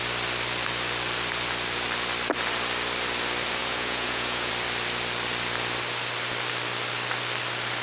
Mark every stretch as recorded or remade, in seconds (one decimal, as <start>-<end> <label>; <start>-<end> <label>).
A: 0.0-3.6 recorded; 3.6-4.5 remade; 4.5-7.8 recorded